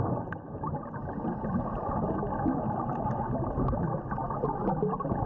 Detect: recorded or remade recorded